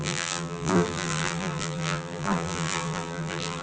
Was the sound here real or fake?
fake